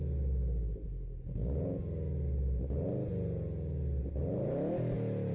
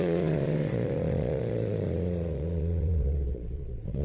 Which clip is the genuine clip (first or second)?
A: first